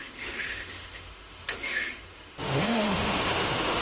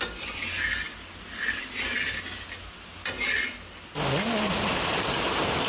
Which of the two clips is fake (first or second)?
first